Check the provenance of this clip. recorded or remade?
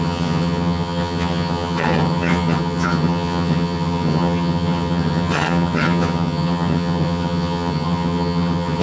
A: remade